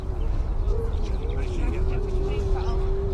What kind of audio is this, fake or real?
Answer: real